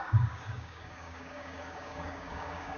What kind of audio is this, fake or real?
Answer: fake